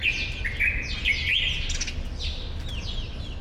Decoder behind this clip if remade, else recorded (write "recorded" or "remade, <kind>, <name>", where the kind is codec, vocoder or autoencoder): recorded